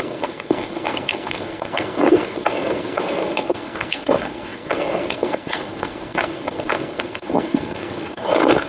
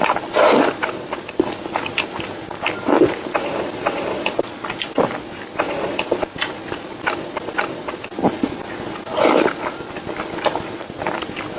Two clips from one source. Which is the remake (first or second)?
first